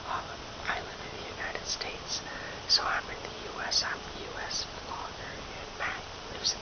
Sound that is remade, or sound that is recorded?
recorded